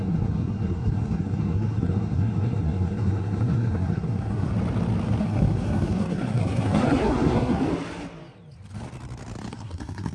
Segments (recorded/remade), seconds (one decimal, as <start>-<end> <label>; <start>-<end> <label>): 0.0-4.5 remade; 4.5-5.2 recorded; 5.2-7.6 remade; 7.6-9.5 recorded; 9.5-10.1 remade